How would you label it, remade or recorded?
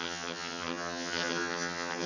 remade